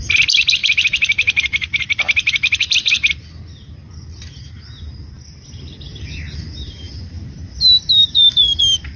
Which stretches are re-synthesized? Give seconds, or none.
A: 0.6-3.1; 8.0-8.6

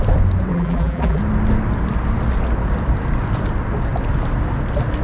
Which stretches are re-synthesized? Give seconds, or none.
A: 0.5-1.2

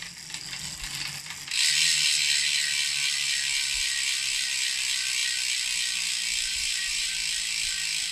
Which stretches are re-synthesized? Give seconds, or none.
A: 6.5-7.1